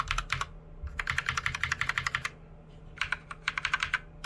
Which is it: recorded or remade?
recorded